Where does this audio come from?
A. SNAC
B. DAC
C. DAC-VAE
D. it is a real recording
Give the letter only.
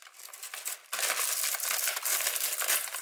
D